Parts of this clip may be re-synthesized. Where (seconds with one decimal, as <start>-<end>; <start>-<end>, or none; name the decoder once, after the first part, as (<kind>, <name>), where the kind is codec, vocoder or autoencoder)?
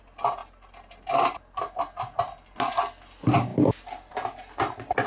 none